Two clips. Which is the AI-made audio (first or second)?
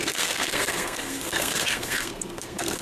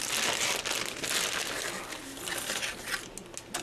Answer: first